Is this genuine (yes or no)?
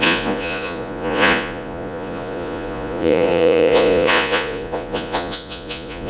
no